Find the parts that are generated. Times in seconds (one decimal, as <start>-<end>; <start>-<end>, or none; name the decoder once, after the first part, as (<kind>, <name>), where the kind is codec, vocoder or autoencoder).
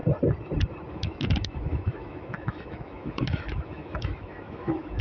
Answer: 0.9-5.0 (autoencoder, DAC-VAE)